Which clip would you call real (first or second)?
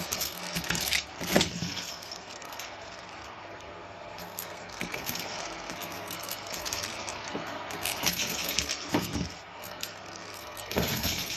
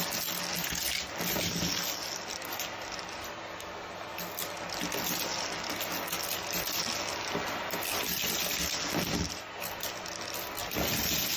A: second